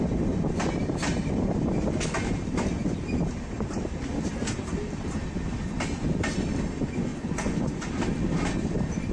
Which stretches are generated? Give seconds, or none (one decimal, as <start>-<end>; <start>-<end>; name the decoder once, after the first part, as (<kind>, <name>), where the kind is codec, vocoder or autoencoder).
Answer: 7.1-7.9 (vocoder, Vocos)